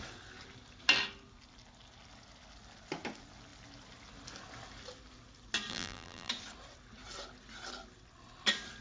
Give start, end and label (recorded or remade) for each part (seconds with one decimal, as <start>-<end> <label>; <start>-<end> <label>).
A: 0.0-5.7 recorded; 5.7-6.3 remade; 6.3-8.8 recorded